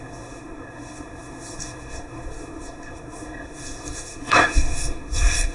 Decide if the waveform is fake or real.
fake